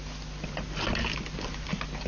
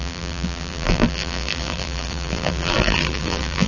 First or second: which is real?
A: first